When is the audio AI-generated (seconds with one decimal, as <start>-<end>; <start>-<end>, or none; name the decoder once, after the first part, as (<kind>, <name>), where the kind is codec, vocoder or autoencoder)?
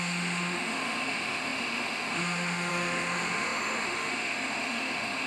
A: 0.0-5.3 (autoencoder, DAC-VAE)